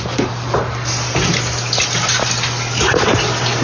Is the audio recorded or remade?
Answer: recorded